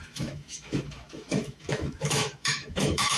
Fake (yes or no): yes